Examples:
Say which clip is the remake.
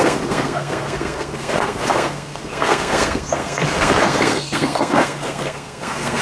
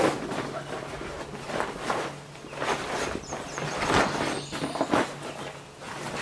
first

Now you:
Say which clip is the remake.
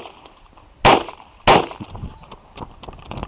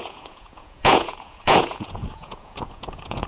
second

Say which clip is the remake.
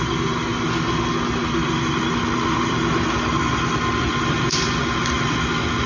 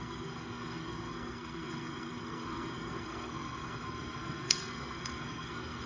second